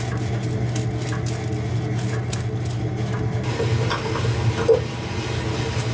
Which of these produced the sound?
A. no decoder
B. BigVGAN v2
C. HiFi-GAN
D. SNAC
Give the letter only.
A